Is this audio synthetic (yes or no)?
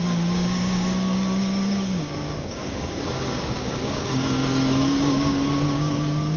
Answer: yes